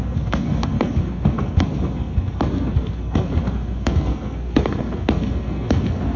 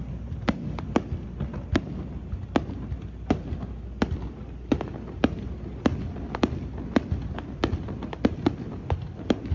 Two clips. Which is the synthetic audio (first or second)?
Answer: first